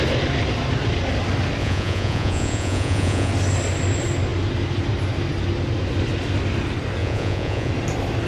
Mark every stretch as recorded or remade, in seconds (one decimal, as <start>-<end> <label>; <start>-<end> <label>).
0.0-1.6 recorded; 1.6-3.3 remade; 3.3-7.0 recorded; 7.0-7.7 remade; 7.7-8.3 recorded